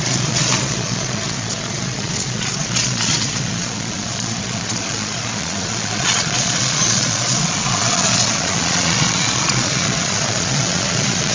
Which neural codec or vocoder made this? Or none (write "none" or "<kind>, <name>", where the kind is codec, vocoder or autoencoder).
vocoder, Vocos